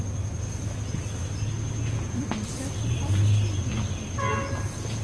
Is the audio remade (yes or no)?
no